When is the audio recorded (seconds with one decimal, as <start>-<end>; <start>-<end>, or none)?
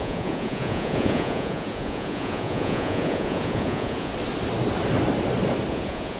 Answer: 4.1-5.7